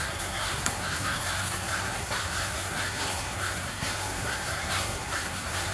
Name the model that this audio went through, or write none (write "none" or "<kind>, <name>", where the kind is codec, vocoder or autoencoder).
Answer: codec, SNAC